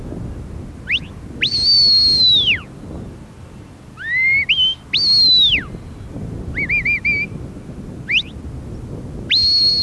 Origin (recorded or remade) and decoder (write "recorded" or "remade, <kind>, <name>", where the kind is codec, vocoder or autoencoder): recorded